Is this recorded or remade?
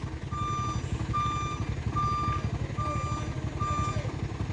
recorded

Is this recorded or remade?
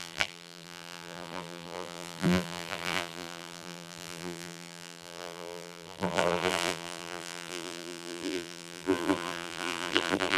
remade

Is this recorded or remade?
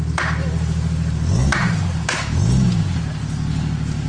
recorded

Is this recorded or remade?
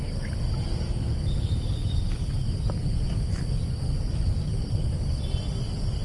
recorded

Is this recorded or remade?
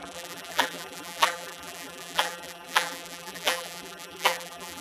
remade